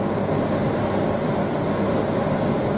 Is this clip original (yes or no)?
yes